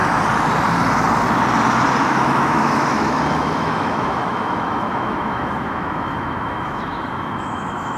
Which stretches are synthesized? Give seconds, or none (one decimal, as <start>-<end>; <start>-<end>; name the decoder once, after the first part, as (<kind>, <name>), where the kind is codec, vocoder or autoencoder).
2.0-8.0 (autoencoder, DAC-VAE)